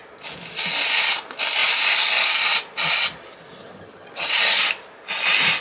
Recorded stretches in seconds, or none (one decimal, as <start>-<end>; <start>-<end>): 0.0-3.6; 4.3-5.6